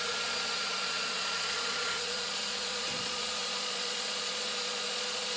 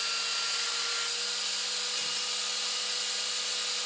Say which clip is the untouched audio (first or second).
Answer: second